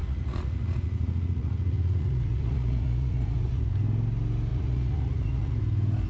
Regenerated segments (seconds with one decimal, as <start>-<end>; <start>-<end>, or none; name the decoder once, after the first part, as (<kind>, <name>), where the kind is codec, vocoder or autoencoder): 0.0-3.7 (vocoder, Vocos); 4.5-5.6